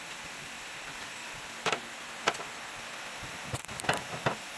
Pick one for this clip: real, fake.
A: real